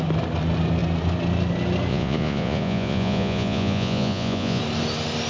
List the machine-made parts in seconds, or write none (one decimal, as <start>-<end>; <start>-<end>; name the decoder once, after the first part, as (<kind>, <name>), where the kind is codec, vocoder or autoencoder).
1.9-4.6 (vocoder, Vocos)